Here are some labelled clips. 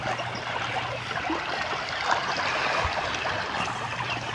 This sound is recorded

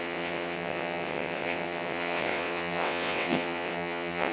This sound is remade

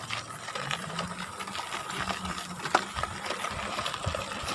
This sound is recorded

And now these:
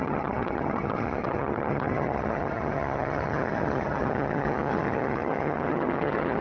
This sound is remade